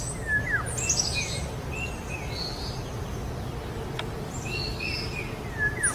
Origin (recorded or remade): recorded